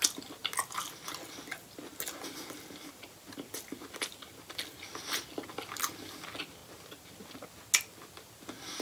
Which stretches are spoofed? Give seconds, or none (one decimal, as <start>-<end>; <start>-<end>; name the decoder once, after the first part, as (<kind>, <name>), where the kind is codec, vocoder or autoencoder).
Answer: none